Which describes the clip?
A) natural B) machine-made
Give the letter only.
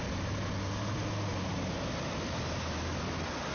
A